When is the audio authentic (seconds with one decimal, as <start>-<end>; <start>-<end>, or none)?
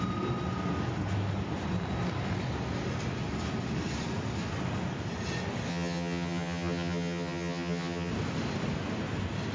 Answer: 0.0-5.7; 8.1-9.5